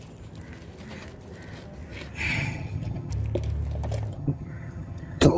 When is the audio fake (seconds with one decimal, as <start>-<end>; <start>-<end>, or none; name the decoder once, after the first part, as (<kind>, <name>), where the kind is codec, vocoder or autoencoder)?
2.3-3.1 (vocoder, HiFi-GAN); 4.1-5.4